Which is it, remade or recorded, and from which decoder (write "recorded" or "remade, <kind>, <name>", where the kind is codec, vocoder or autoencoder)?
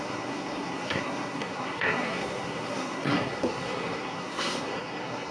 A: remade, codec, SNAC